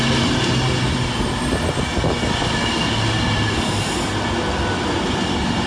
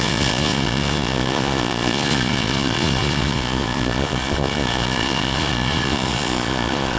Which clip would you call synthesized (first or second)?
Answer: second